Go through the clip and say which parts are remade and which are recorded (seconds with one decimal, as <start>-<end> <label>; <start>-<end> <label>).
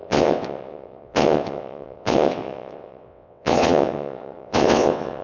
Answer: 0.0-5.2 remade